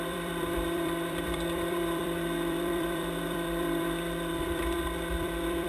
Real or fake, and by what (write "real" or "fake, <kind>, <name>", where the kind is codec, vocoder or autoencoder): fake, vocoder, BigVGAN v2